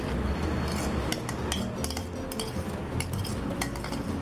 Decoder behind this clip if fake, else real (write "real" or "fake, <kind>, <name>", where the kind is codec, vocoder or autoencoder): real